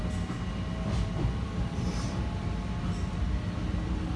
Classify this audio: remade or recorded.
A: recorded